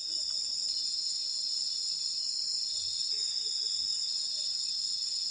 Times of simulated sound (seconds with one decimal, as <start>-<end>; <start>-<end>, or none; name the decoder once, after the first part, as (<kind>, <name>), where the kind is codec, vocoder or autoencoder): none